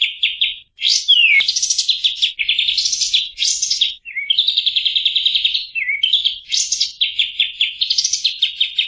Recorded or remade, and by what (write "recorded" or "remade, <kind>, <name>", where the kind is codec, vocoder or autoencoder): recorded